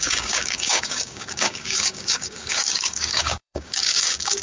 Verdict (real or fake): fake